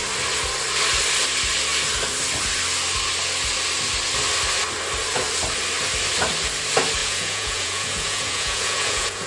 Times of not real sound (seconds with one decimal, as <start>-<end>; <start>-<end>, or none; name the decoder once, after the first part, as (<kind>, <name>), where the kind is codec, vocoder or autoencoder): 7.0-9.3 (vocoder, Vocos)